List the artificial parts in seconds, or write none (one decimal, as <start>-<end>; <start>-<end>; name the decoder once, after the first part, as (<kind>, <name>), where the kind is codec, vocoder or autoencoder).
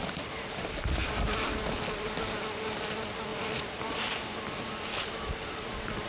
none